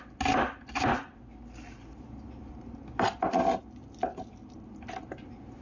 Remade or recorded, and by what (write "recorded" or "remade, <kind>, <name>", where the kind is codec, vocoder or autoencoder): recorded